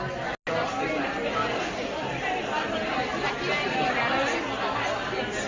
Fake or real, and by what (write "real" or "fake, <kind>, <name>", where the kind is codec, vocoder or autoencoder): real